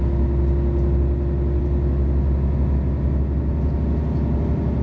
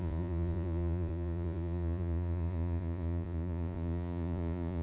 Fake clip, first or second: second